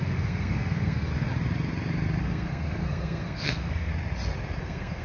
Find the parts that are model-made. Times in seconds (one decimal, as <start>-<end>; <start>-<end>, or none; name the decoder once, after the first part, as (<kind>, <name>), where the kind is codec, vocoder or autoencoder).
0.0-1.1 (codec, SNAC); 2.2-3.9; 4.6-5.0